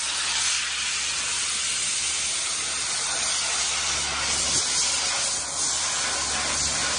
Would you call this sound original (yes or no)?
yes